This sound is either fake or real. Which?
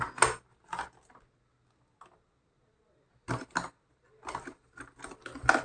real